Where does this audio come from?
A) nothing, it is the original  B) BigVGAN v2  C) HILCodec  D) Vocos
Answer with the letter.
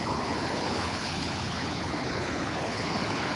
C